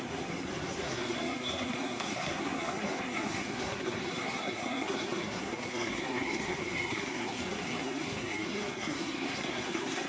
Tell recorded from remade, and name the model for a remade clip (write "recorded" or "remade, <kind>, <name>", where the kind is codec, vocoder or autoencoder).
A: remade, codec, SNAC